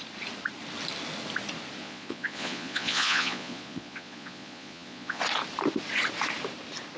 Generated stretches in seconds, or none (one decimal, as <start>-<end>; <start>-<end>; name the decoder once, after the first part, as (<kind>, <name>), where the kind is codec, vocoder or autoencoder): 1.8-5.2 (vocoder, Vocos)